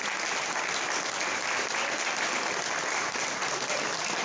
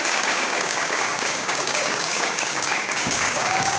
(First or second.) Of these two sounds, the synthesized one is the second